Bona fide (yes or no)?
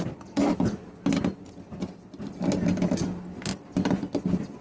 yes